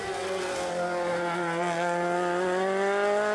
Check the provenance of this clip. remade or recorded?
recorded